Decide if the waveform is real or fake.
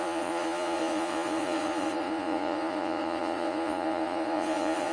fake